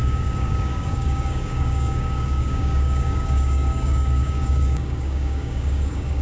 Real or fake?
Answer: fake